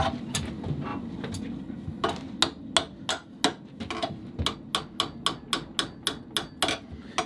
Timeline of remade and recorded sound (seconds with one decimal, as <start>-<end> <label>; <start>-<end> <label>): 0.0-7.3 recorded

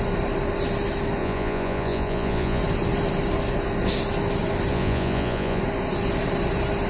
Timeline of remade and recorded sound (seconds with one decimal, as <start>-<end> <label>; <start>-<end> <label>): 0.0-1.2 recorded; 1.2-2.6 remade; 2.6-4.7 recorded; 4.7-5.6 remade; 5.6-6.9 recorded

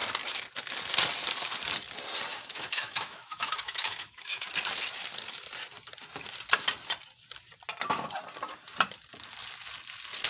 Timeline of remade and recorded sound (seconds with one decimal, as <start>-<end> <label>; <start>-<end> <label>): 0.0-2.3 recorded; 2.3-4.5 remade; 4.5-10.3 recorded

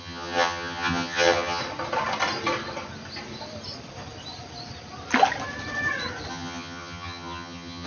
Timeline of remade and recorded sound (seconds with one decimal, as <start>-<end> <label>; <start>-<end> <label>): 0.0-1.6 remade; 1.6-6.3 recorded; 6.3-7.9 remade

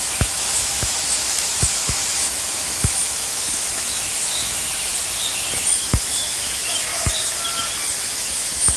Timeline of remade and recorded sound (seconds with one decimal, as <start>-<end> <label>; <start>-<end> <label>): 0.0-4.9 remade; 4.9-5.8 recorded; 5.8-6.9 remade; 6.9-8.0 recorded; 8.0-8.8 remade

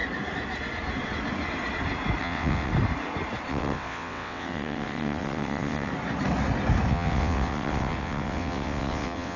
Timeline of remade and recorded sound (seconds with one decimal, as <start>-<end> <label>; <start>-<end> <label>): 0.0-2.2 recorded; 2.2-2.7 remade; 2.7-3.5 recorded; 3.5-5.9 remade; 5.9-6.9 recorded; 6.9-9.4 remade